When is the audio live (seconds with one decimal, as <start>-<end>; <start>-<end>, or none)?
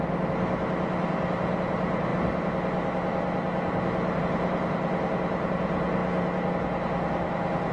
0.0-7.7